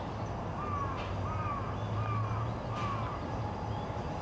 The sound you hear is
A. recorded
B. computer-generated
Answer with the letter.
A